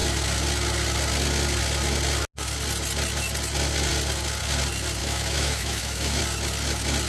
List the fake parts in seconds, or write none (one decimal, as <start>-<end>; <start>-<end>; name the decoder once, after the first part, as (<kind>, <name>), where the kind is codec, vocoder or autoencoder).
5.0-6.2 (autoencoder, DAC-VAE)